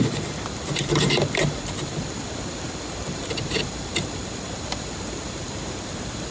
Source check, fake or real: fake